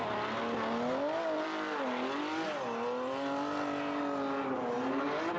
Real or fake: real